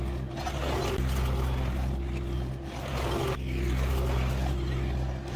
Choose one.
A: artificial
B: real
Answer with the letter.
B